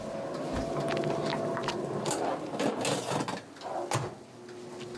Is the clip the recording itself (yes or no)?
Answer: yes